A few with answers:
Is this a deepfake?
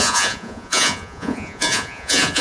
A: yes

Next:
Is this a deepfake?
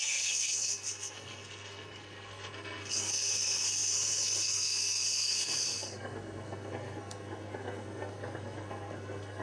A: yes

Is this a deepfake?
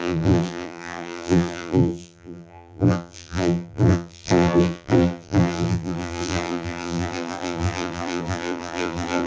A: yes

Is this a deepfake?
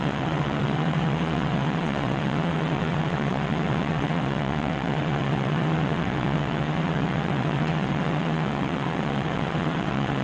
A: yes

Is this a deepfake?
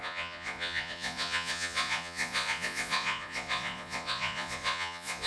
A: yes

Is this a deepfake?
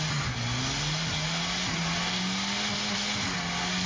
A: no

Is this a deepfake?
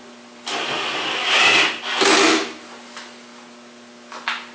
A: no